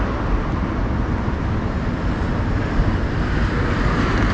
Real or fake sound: real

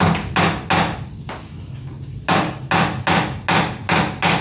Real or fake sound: real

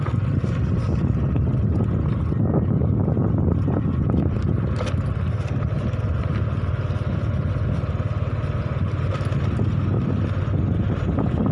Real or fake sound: real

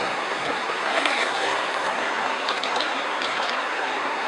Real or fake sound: fake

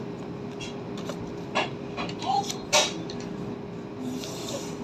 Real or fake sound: real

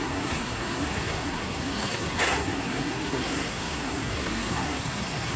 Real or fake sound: fake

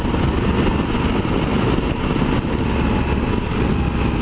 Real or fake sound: real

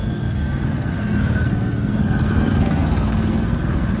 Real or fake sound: fake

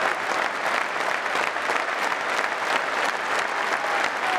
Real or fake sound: real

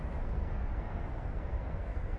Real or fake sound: fake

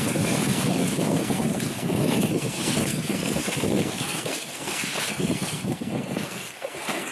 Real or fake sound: fake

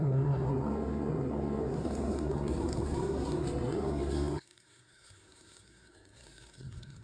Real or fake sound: fake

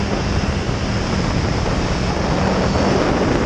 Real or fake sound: real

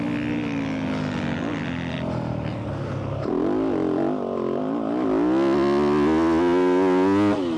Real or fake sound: real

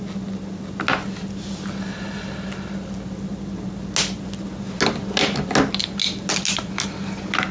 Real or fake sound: real